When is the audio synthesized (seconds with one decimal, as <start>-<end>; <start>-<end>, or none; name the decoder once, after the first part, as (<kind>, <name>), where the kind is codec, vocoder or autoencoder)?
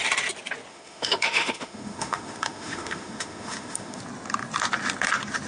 0.7-4.0 (autoencoder, DAC-VAE)